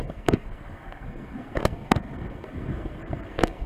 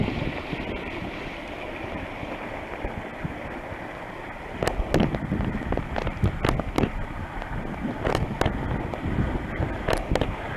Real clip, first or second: second